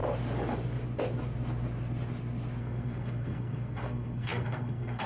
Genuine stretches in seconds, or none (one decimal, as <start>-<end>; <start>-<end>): 0.0-2.6